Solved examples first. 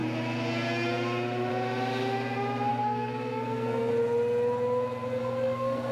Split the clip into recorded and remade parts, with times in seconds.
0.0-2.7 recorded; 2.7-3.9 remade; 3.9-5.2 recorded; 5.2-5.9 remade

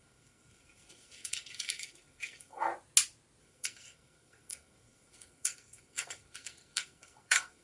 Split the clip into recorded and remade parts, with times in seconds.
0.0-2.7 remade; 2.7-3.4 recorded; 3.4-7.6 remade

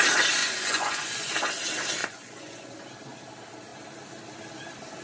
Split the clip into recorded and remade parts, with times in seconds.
0.0-0.4 recorded; 0.4-1.3 remade; 1.3-2.0 recorded; 2.0-2.7 remade; 2.7-5.0 recorded

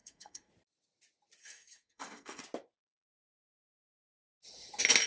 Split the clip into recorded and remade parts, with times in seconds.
0.0-0.5 remade; 0.5-1.4 recorded; 1.4-2.4 remade; 2.4-5.1 recorded